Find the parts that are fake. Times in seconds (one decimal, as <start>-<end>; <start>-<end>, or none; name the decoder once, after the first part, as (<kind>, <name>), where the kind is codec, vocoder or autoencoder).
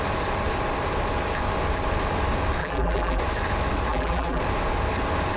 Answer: 2.6-3.2 (vocoder, BigVGAN v2); 3.9-4.4